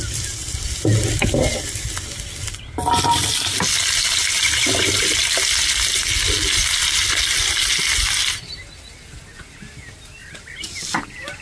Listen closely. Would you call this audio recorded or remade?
recorded